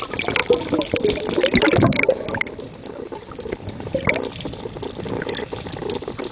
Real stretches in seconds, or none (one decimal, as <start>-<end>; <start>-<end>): 0.0-6.3